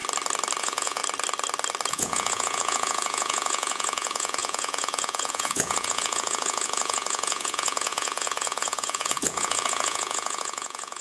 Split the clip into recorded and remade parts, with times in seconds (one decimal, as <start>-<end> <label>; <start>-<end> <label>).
0.0-0.6 recorded; 0.6-1.0 remade; 1.0-1.9 recorded; 1.9-11.0 remade